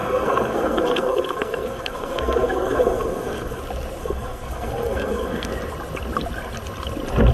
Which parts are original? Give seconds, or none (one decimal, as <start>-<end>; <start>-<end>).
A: 3.6-4.0; 5.5-7.3